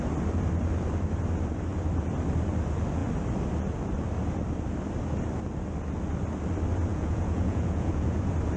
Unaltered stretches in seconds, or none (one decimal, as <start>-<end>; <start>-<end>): 0.0-6.9; 8.1-8.6